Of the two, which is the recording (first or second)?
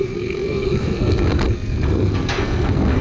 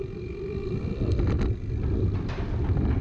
second